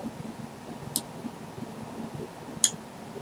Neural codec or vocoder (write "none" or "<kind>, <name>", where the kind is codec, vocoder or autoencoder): none